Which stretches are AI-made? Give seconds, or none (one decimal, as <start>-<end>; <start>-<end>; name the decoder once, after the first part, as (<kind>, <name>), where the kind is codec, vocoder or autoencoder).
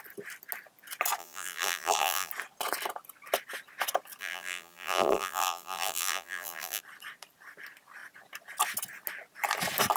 1.2-2.3 (vocoder, BigVGAN v2); 4.2-6.8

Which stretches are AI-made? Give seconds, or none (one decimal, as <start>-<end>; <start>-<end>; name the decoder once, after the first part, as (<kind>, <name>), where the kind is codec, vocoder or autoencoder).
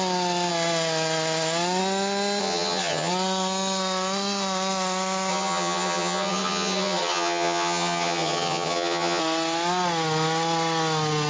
2.4-3.1 (vocoder, HiFi-GAN); 5.3-9.2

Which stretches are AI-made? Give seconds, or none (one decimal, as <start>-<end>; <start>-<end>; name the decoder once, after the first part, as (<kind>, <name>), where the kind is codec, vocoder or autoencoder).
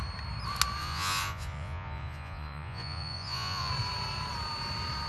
0.8-3.7 (vocoder, Vocos)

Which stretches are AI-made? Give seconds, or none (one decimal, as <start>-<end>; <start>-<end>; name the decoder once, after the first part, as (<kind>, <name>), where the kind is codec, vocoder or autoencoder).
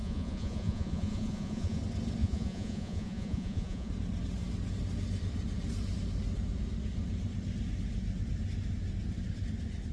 0.0-1.8 (vocoder, Vocos); 2.2-3.9